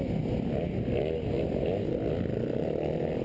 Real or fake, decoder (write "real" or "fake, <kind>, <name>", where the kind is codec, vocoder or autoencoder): real